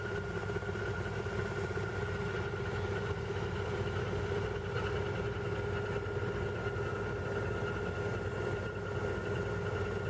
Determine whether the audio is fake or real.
real